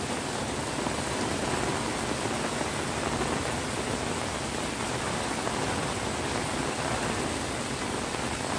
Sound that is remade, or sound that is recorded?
recorded